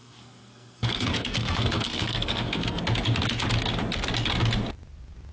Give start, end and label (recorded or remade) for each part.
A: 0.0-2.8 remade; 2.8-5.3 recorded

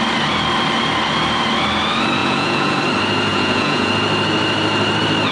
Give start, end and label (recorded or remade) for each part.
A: 0.0-2.2 recorded; 2.2-2.8 remade; 2.8-3.3 recorded; 3.3-3.9 remade; 3.9-5.3 recorded

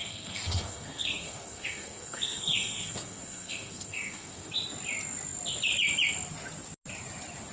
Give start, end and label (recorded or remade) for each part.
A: 0.0-4.5 remade; 4.5-7.5 recorded

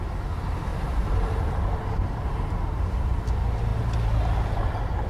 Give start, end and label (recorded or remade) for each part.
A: 0.0-0.7 recorded; 0.7-3.2 remade; 3.2-5.1 recorded

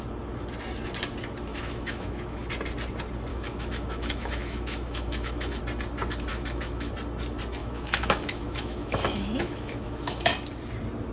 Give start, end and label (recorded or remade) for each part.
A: 0.0-1.5 recorded; 1.5-2.5 remade; 2.5-3.3 recorded; 3.3-5.6 remade; 5.6-6.3 recorded; 6.3-6.9 remade; 6.9-7.6 recorded; 7.6-10.3 remade; 10.3-11.1 recorded

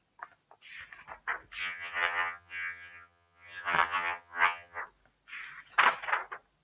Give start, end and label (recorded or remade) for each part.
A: 0.0-1.6 recorded; 1.6-4.8 remade; 4.8-6.6 recorded

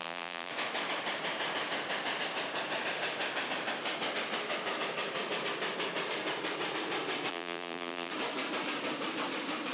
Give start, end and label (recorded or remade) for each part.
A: 0.0-0.5 remade; 0.5-7.3 recorded; 7.3-8.1 remade; 8.1-9.7 recorded

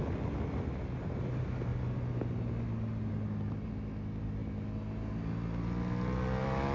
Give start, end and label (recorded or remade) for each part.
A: 0.0-6.7 recorded